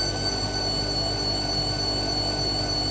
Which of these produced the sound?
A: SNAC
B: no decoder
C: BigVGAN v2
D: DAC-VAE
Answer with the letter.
B